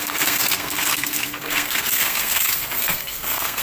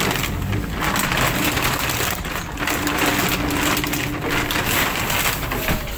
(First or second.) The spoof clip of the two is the first